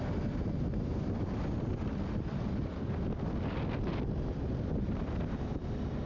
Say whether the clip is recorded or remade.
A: recorded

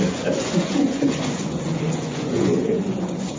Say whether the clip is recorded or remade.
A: remade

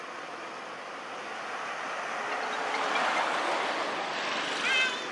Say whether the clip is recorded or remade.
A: recorded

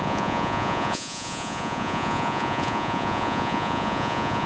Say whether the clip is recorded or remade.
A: remade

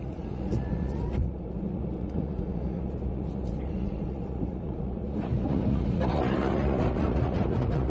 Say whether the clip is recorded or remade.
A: remade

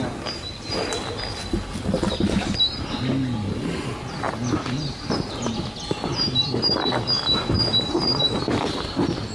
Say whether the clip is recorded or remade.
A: recorded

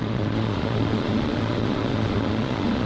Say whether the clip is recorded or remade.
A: remade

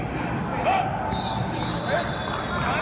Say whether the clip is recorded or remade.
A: recorded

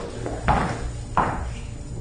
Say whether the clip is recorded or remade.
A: recorded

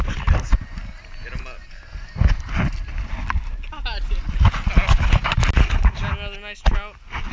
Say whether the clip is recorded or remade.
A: recorded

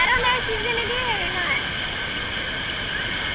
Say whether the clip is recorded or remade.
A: recorded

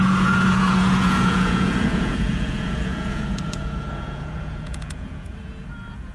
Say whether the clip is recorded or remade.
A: remade